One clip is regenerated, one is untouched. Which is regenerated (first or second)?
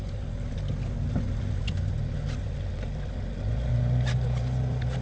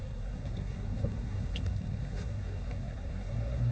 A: second